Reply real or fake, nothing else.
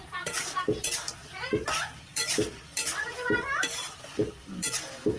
fake